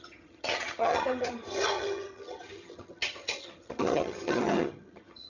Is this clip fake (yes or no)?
yes